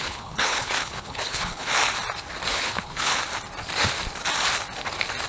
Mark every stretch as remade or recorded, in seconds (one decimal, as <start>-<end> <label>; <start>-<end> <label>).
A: 0.0-1.8 remade; 1.8-2.5 recorded; 2.5-3.1 remade; 3.1-5.3 recorded